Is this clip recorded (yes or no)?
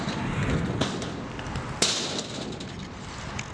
yes